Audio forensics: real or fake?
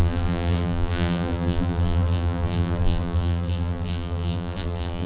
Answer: fake